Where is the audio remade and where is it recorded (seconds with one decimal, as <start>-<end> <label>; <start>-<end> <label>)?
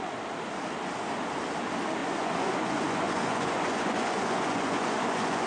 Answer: 0.0-2.0 recorded; 2.0-5.5 remade